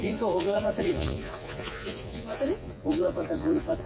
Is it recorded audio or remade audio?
remade